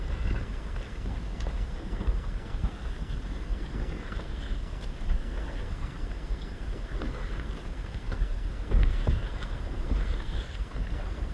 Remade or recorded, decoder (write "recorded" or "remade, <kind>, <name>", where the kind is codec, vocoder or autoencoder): remade, codec, SNAC